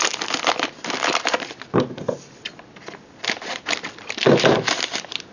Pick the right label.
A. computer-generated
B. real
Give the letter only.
B